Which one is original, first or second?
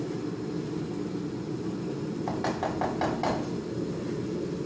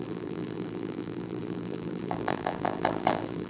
first